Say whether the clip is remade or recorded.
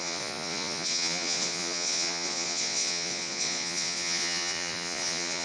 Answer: remade